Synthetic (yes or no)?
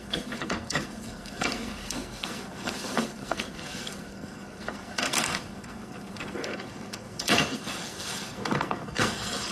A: yes